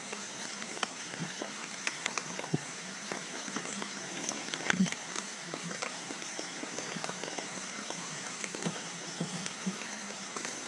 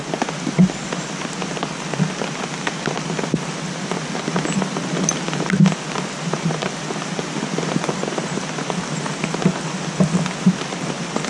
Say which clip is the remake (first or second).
first